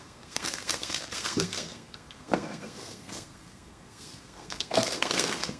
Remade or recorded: remade